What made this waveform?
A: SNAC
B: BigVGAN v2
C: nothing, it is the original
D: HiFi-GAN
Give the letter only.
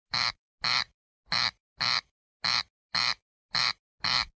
C